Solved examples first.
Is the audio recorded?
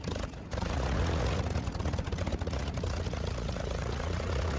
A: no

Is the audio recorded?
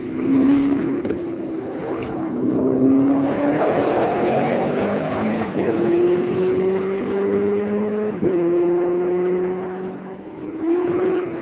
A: no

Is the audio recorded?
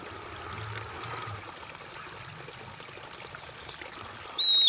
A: yes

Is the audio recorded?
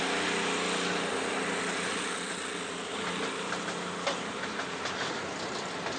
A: yes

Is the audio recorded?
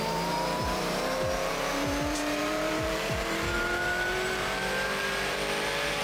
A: no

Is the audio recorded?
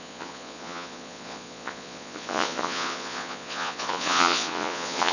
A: no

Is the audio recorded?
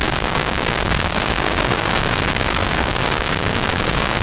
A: no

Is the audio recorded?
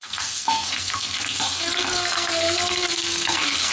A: no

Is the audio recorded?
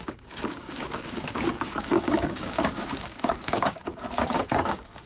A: no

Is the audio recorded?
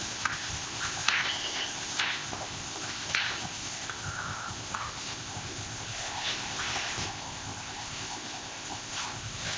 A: no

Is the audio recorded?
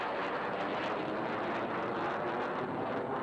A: yes